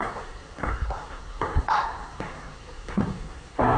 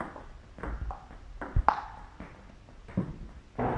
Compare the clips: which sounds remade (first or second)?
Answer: first